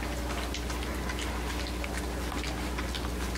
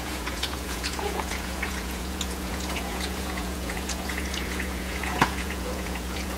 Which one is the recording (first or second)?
first